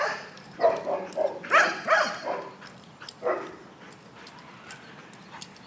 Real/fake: real